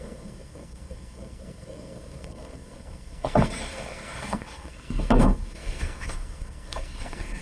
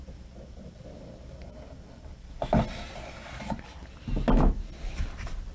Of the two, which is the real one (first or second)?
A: second